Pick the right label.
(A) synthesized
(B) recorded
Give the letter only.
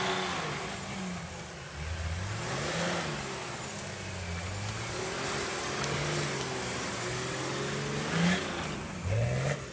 B